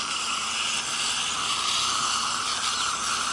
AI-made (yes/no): no